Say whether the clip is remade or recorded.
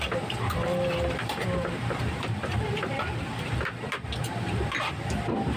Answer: remade